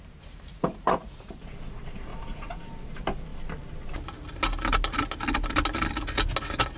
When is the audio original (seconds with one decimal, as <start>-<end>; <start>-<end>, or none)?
0.0-0.5; 1.3-2.1; 2.6-6.8